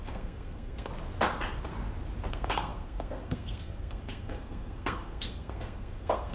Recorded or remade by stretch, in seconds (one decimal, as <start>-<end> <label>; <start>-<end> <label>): 0.0-0.9 remade; 0.9-2.3 recorded; 2.3-6.3 remade